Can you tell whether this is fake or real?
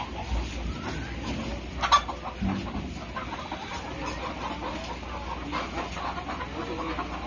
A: real